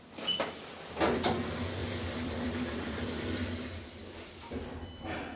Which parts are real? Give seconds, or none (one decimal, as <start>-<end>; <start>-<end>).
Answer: 0.0-1.8; 3.2-5.4